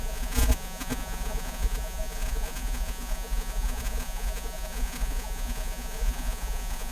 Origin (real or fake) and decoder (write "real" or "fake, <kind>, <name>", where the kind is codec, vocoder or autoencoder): fake, vocoder, Vocos